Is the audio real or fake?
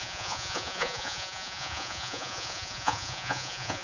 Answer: fake